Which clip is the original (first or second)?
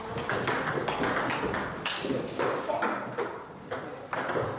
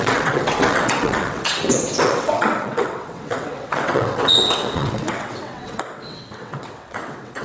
first